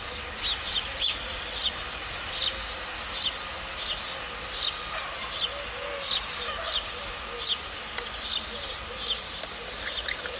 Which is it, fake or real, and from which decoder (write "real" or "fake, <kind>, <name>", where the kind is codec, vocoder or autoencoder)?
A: real